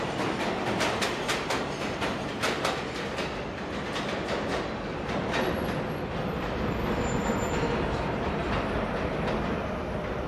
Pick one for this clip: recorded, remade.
recorded